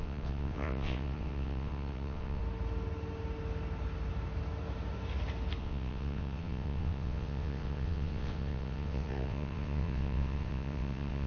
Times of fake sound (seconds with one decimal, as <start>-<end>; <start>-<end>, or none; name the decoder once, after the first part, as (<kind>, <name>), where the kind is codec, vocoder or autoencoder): 0.0-2.4 (vocoder, WaveNeXt); 5.6-11.3